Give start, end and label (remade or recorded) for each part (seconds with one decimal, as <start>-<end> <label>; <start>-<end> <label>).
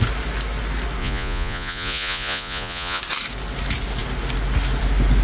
0.0-1.0 recorded; 1.0-3.0 remade; 3.0-5.2 recorded